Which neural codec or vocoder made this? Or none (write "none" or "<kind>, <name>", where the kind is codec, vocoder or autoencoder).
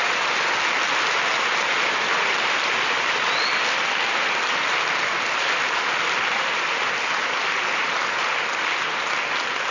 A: none